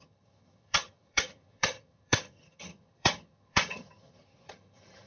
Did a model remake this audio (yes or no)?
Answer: yes